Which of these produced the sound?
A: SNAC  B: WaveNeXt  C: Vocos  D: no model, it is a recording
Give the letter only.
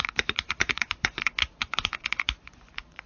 C